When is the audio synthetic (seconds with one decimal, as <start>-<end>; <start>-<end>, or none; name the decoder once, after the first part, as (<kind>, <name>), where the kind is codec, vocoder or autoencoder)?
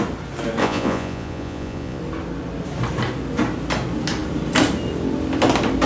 0.6-2.0 (vocoder, Vocos)